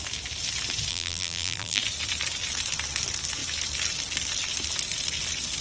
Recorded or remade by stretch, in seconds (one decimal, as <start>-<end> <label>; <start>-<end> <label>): 0.0-0.9 recorded; 0.9-1.8 remade; 1.8-5.6 recorded